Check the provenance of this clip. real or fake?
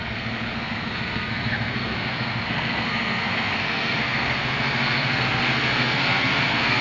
fake